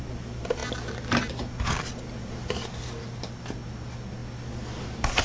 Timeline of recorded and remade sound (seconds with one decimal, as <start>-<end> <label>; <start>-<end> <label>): 0.0-5.2 recorded